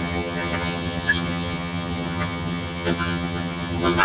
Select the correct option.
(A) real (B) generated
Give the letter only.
B